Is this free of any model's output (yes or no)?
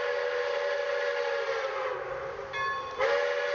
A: yes